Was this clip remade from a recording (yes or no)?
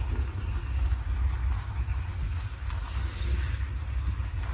no